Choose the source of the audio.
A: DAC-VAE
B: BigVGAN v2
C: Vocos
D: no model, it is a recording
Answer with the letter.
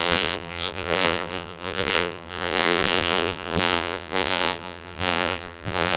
B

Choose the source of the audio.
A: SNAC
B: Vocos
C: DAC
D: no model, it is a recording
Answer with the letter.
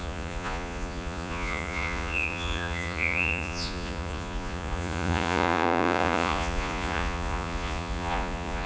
B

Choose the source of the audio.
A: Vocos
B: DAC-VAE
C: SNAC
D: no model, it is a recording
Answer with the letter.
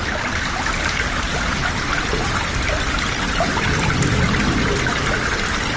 D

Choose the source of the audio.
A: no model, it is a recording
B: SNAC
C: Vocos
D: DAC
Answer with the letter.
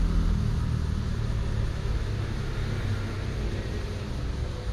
A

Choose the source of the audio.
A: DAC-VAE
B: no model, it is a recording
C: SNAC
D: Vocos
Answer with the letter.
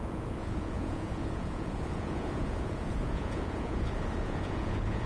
D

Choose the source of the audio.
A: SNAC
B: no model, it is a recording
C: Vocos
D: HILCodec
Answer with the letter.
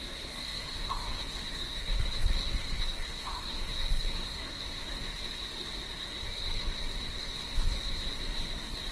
A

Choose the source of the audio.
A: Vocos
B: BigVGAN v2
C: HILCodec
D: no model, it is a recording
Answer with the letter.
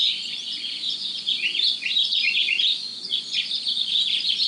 A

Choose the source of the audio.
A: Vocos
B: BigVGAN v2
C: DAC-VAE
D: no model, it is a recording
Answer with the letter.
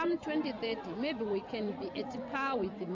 A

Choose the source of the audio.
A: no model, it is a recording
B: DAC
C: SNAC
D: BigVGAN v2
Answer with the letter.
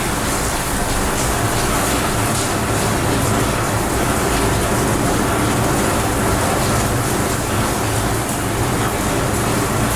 A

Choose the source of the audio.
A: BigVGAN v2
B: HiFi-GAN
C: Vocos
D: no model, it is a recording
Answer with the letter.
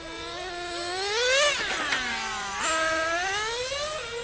D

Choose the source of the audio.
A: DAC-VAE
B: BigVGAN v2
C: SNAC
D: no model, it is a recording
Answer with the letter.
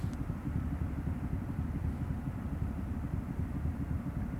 B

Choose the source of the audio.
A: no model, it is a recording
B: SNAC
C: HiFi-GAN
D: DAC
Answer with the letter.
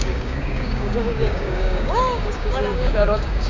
D